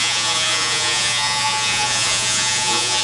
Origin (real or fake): fake